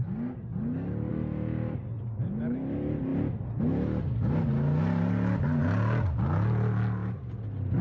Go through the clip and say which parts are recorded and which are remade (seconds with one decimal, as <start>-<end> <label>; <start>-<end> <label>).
0.0-7.8 recorded